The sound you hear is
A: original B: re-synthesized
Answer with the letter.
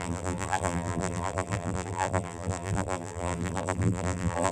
B